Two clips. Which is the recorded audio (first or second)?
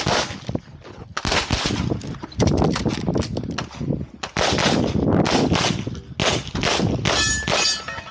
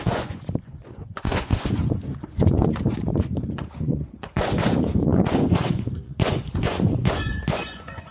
first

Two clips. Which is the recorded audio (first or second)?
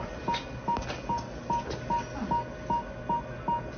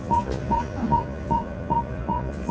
first